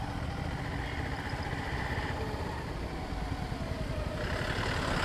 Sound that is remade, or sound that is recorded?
recorded